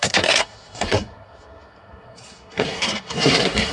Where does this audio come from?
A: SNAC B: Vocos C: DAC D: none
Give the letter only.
A